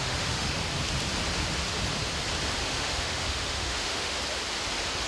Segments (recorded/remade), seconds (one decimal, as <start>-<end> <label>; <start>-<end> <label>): 0.0-0.6 remade; 0.6-2.6 recorded; 2.6-4.2 remade; 4.2-5.1 recorded